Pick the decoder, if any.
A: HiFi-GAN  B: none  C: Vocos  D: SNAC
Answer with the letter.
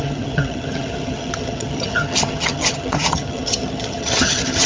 A